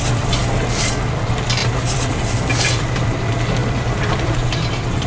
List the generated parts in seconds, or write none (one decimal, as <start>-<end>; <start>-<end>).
0.0-5.1